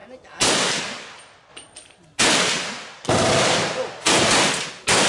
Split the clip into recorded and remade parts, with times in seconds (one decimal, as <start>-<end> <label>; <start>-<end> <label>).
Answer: 0.0-5.1 recorded